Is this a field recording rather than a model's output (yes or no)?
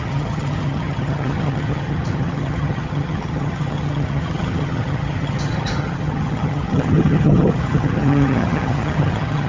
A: no